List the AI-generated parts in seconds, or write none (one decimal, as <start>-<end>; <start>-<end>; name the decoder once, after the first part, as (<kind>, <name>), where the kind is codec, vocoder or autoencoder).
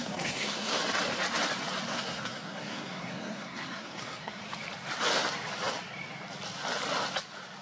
0.0-0.8 (codec, SNAC); 1.9-4.4